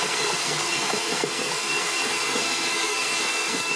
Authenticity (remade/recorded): remade